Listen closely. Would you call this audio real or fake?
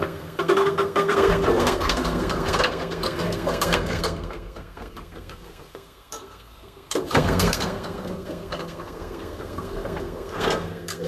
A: fake